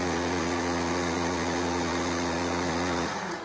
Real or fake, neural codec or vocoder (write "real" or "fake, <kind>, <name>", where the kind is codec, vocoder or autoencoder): fake, vocoder, Vocos